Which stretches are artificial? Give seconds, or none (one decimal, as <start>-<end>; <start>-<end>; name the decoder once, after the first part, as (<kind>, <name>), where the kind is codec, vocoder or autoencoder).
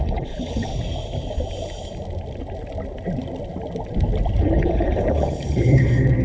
0.0-0.7 (codec, HILCodec); 4.4-6.2